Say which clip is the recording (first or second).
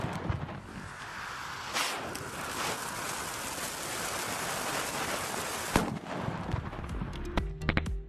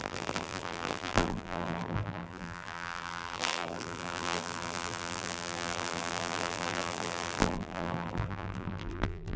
first